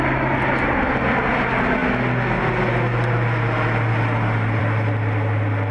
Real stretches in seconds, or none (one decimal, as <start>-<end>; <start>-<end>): 0.0-5.7